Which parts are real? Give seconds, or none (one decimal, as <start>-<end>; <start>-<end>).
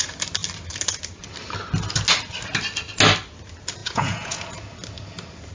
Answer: 0.0-3.8; 4.4-5.5